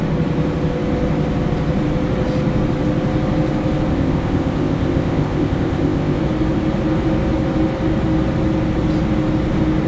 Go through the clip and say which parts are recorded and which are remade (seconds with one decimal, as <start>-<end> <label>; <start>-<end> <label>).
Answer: 0.0-3.9 recorded; 3.9-6.2 remade; 6.2-9.9 recorded